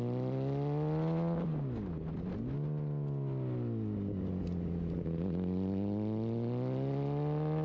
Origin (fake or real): real